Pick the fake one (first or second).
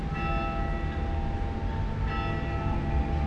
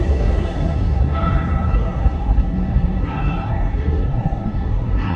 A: second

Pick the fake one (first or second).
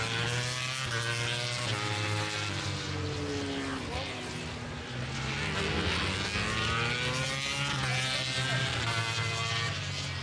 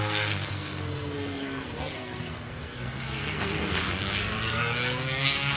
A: second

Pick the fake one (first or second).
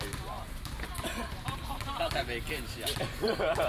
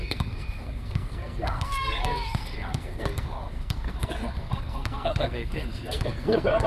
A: second